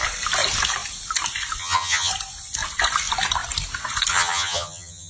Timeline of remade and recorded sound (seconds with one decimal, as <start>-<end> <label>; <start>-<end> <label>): 0.0-1.6 recorded; 1.6-2.1 remade; 2.1-4.1 recorded; 4.1-5.1 remade